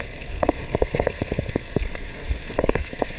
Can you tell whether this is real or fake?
fake